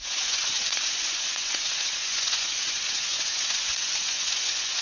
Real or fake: fake